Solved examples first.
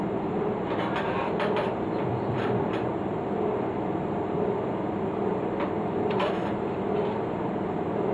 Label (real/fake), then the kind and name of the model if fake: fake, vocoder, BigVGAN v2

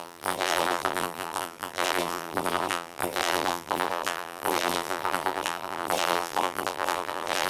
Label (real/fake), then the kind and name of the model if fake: fake, vocoder, BigVGAN v2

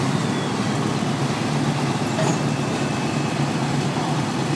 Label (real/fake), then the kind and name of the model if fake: fake, vocoder, BigVGAN v2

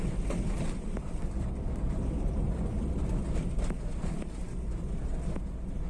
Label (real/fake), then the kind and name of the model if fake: fake, vocoder, BigVGAN v2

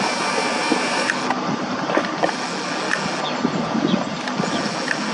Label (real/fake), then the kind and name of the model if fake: real